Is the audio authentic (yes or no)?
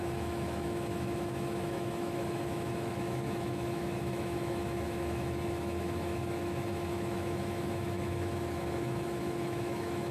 no